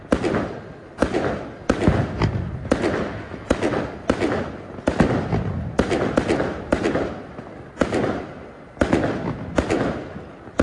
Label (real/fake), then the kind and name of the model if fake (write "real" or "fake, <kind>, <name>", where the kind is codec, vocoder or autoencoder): real